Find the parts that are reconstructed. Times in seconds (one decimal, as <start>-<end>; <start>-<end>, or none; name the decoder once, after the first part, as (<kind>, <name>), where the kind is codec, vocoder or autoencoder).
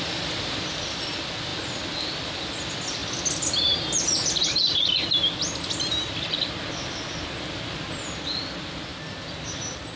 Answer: none